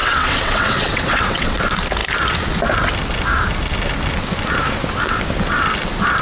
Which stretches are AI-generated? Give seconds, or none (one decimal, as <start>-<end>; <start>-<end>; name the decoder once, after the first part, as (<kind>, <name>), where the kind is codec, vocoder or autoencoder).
0.0-1.6 (vocoder, WaveNeXt)